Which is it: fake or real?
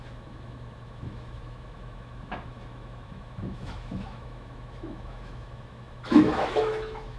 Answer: fake